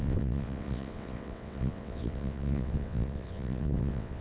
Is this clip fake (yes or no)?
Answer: yes